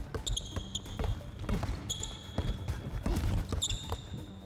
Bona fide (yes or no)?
yes